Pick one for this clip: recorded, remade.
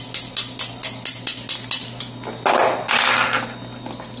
recorded